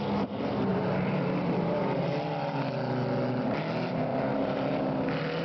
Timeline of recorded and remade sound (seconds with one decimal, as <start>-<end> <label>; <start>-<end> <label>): 0.0-0.7 recorded; 0.7-2.1 remade; 2.1-4.1 recorded; 4.1-4.8 remade; 4.8-5.4 recorded